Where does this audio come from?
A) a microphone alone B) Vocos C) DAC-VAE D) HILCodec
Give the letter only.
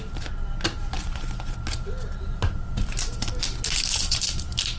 A